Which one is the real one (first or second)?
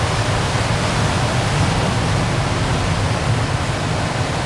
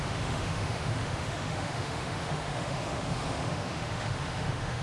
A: first